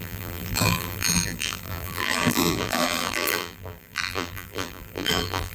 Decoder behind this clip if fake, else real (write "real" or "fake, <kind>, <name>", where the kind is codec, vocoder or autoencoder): fake, vocoder, BigVGAN v2